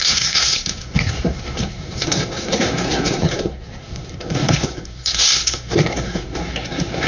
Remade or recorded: remade